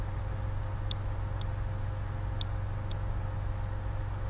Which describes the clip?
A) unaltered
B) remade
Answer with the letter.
A